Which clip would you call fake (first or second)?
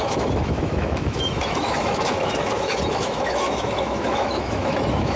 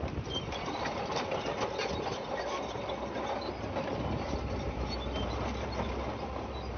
first